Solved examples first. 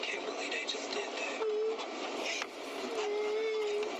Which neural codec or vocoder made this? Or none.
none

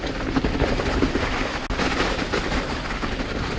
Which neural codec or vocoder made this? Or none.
none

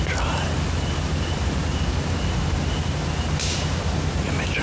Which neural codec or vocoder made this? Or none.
none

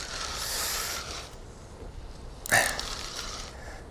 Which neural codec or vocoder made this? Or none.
none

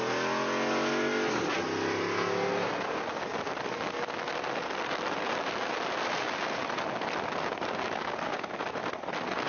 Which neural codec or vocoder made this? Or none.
none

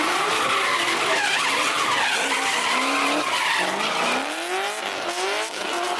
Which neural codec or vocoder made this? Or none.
none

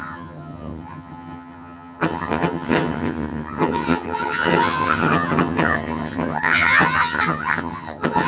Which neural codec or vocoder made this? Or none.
vocoder, HiFi-GAN